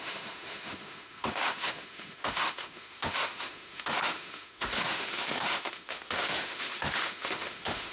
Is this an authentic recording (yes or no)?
no